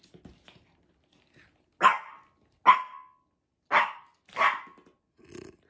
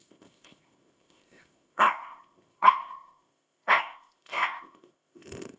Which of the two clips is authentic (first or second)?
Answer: first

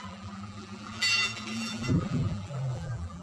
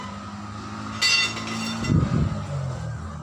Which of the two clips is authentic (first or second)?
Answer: second